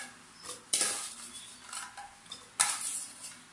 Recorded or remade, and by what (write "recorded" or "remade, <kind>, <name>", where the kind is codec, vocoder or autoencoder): recorded